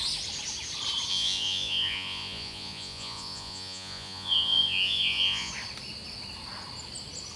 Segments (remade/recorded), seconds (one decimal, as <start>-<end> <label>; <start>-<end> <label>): 0.0-1.1 recorded; 1.1-5.5 remade; 5.5-7.4 recorded